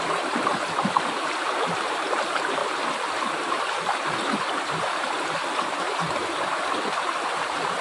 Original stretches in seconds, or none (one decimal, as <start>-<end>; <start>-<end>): 2.6-3.3